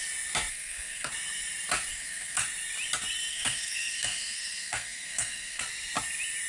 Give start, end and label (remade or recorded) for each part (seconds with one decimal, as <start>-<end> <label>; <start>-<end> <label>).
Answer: 0.0-0.5 recorded; 0.5-1.1 remade; 1.1-1.9 recorded; 1.9-2.4 remade; 2.4-3.3 recorded; 3.3-5.6 remade; 5.6-6.5 recorded